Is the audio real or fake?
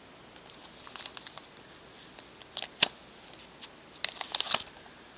real